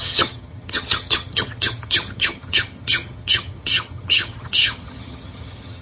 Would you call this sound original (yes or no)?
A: no